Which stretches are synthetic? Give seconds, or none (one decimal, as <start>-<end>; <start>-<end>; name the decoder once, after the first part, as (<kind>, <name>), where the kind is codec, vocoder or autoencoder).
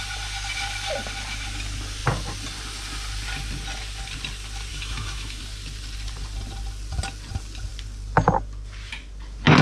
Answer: 4.7-5.4 (autoencoder, DAC-VAE)